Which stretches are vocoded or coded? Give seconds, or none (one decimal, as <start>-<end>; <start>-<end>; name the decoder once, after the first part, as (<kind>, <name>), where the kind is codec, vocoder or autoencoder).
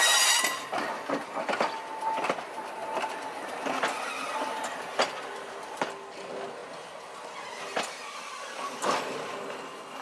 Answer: none